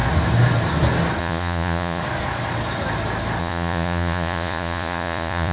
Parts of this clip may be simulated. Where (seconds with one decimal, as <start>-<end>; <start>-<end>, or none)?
1.2-2.0; 3.4-5.5